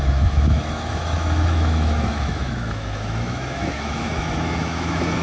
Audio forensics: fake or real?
fake